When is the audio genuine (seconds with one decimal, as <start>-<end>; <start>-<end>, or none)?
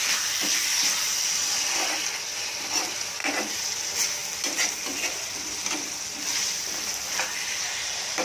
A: 1.1-2.0; 4.2-5.7